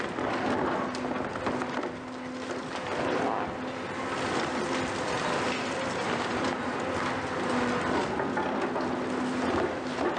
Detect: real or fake real